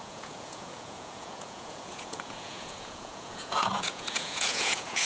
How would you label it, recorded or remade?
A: remade